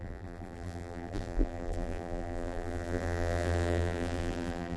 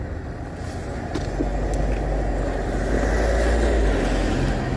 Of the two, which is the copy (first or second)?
first